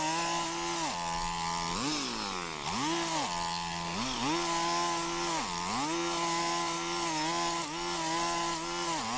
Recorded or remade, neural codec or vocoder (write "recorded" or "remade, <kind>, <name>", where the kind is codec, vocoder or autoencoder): recorded